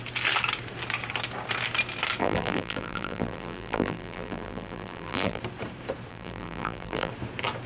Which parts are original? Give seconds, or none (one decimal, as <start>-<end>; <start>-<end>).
0.0-2.2; 5.4-6.1; 7.1-7.7